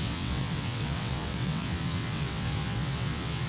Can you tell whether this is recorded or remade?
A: remade